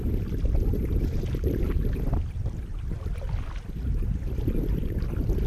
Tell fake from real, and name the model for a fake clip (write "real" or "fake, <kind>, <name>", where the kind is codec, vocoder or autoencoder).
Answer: real